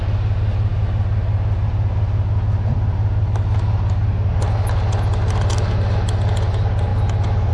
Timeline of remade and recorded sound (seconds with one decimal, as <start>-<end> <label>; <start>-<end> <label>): 0.0-7.5 recorded